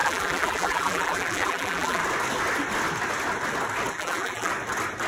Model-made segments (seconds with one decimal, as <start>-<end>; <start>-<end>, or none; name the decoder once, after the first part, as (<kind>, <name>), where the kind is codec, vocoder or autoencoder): 0.0-2.0 (vocoder, BigVGAN v2); 3.9-4.5